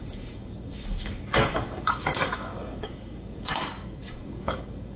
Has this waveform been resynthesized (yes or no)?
yes